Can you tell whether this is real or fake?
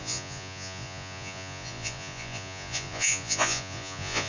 fake